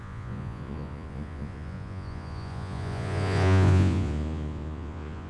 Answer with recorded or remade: remade